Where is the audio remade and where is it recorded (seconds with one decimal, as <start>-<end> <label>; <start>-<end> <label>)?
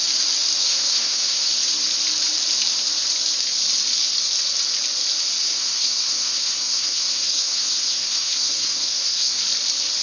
0.0-0.6 recorded; 0.6-1.5 remade; 1.5-5.4 recorded; 5.4-9.4 remade; 9.4-10.0 recorded